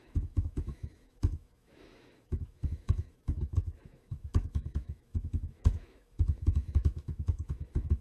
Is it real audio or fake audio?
fake